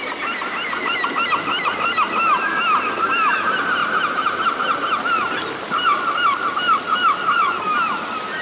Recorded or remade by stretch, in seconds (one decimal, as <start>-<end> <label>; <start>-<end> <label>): 0.0-3.8 recorded; 3.8-4.4 remade; 4.4-8.4 recorded